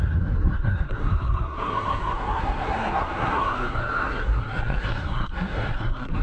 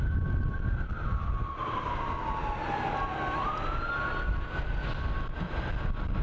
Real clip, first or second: second